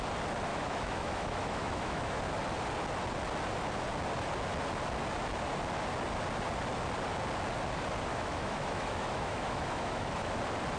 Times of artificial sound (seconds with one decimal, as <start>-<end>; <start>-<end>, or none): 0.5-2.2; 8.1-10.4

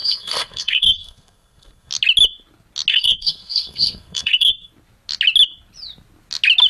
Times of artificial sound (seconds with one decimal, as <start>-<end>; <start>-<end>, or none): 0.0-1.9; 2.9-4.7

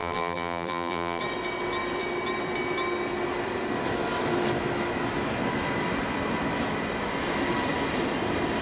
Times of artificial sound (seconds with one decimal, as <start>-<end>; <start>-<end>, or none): 0.0-1.2